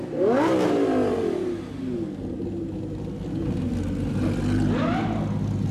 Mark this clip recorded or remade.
recorded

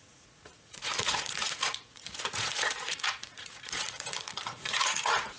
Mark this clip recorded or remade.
remade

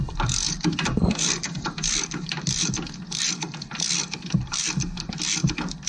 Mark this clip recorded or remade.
remade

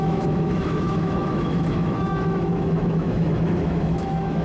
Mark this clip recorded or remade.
remade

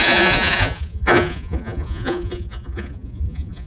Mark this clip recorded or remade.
remade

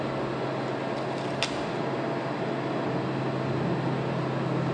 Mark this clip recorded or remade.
recorded